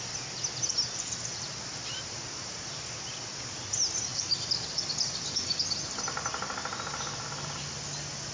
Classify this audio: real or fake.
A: real